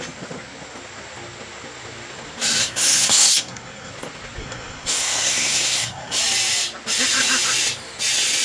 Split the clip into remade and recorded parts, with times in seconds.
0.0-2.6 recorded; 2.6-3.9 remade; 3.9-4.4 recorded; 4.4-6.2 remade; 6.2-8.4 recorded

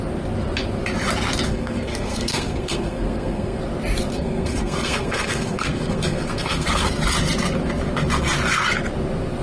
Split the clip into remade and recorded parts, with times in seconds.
0.0-1.5 recorded; 1.5-3.6 remade; 3.6-4.1 recorded; 4.1-6.9 remade; 6.9-9.4 recorded

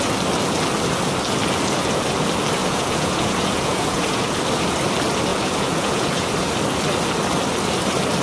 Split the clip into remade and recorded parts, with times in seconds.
0.0-2.6 recorded; 2.6-4.4 remade; 4.4-5.3 recorded; 5.3-6.5 remade; 6.5-8.2 recorded